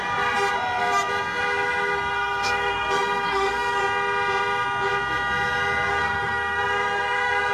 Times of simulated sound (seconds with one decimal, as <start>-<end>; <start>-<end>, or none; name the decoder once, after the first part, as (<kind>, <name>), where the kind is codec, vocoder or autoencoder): 2.1-3.8 (codec, SNAC); 5.9-7.5